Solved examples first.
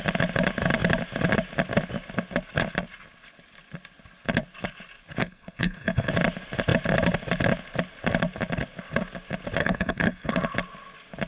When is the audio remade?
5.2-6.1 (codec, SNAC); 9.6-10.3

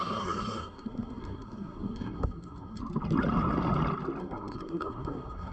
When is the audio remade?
0.0-2.8 (codec, SNAC); 4.2-5.5

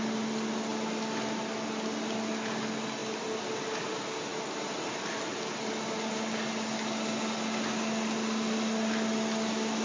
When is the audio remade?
none